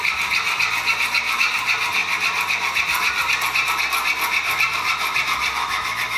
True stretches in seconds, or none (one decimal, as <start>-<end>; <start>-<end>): 0.0-5.6

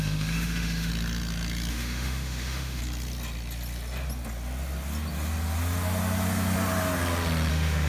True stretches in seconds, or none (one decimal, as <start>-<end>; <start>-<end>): 0.9-1.7; 2.8-7.5